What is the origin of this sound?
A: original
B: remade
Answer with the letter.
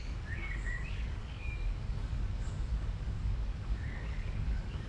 B